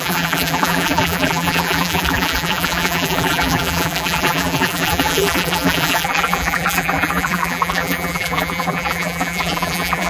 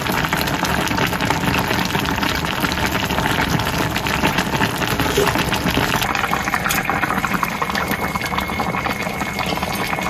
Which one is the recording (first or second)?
second